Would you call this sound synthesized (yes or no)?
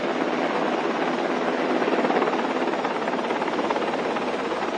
no